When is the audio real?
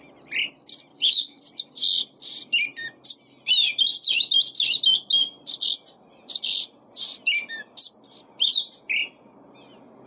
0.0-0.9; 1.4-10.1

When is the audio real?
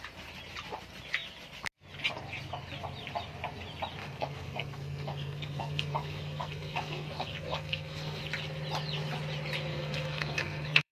0.0-4.0; 8.2-9.7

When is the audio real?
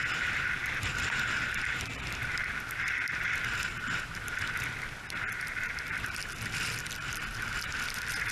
0.0-8.3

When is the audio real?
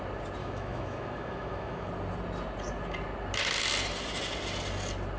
0.0-0.4; 1.9-5.2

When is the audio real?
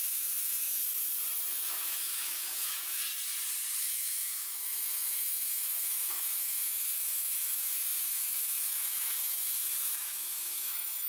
0.8-1.5; 3.0-3.8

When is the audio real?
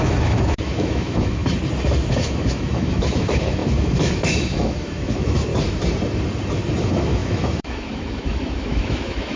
1.4-2.1; 5.5-6.8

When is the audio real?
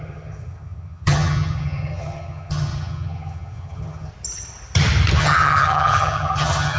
4.1-5.2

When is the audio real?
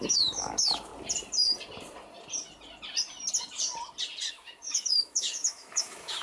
0.9-4.3